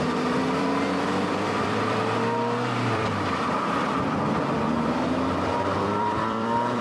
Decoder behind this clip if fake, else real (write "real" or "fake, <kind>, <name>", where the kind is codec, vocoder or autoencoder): fake, vocoder, BigVGAN v2